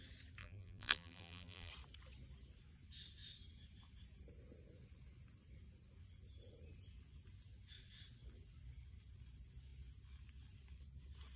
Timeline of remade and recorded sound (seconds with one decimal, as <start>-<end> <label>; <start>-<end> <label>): 0.0-0.4 recorded; 0.4-1.7 remade; 1.7-11.4 recorded